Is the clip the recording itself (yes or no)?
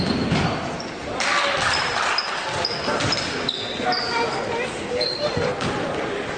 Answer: yes